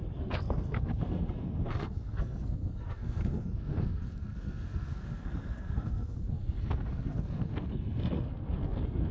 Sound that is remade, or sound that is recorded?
remade